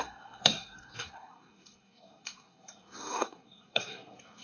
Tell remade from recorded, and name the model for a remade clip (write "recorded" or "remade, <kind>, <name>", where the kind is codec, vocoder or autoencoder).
remade, codec, SNAC